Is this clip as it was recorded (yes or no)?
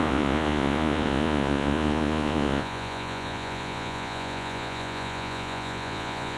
no